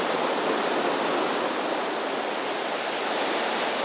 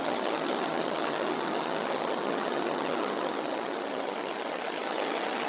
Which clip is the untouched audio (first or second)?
first